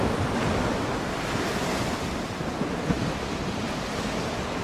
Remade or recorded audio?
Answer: recorded